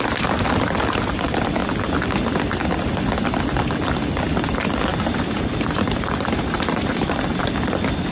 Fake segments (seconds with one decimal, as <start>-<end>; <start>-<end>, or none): 4.9-7.4